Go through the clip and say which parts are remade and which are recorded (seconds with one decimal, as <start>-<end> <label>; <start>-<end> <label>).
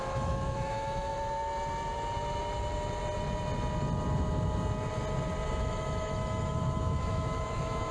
0.0-1.1 remade; 1.1-5.5 recorded; 5.5-7.9 remade